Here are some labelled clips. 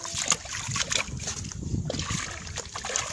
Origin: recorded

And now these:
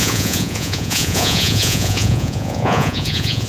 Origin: remade